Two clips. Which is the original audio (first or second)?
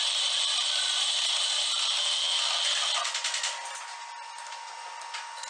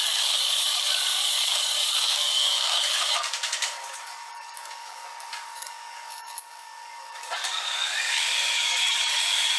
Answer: first